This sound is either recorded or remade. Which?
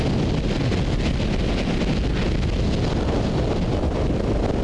recorded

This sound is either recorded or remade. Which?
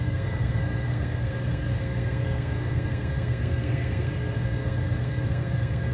remade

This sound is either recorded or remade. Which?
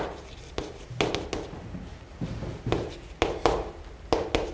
recorded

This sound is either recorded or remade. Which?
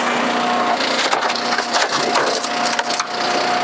recorded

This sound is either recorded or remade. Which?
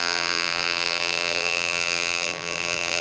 remade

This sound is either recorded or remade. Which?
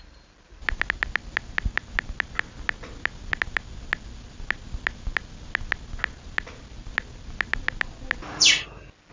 recorded